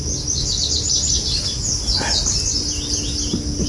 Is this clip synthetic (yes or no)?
no